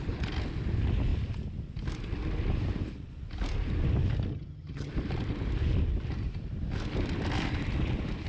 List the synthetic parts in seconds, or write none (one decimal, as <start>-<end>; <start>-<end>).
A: 4.3-4.9

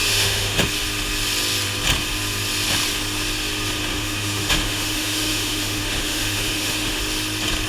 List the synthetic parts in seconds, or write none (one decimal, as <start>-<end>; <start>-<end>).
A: 0.0-0.6; 3.9-7.0

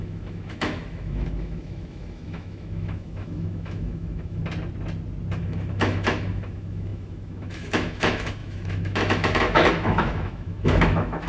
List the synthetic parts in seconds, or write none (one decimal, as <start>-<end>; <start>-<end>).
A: 0.0-4.4; 5.4-11.3

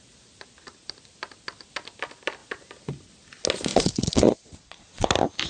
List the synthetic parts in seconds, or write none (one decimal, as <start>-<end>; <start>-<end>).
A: 3.7-5.1

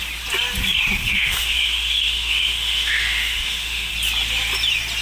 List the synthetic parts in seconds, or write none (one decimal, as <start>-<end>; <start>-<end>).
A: 1.0-3.9

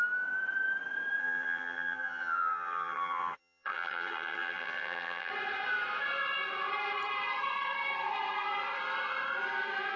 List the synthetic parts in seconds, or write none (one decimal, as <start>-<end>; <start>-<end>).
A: 1.2-5.3